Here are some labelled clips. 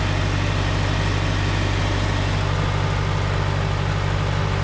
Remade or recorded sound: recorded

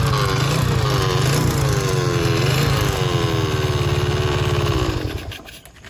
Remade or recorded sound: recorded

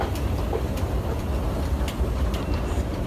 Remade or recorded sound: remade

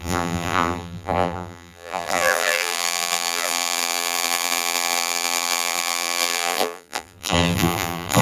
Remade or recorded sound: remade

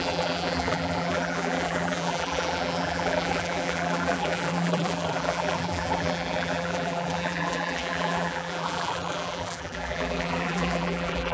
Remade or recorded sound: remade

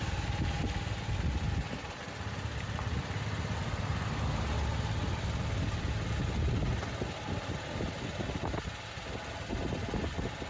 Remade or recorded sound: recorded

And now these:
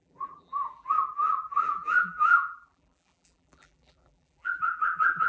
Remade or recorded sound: remade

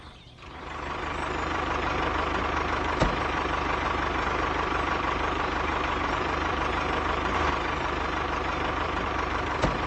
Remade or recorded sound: remade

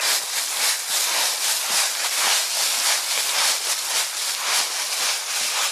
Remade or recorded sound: recorded